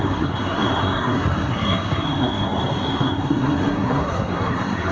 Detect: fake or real fake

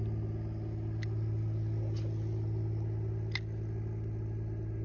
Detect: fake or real real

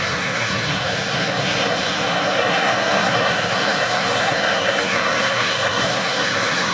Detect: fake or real fake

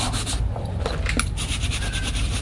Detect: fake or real real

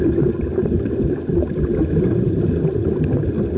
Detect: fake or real real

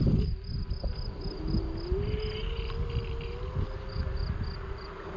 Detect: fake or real real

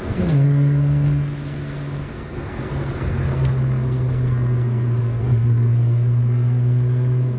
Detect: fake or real fake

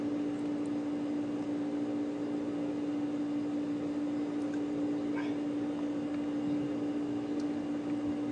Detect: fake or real real